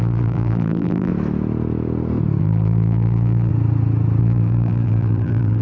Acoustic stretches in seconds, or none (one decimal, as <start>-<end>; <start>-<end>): 1.1-2.4; 3.5-4.2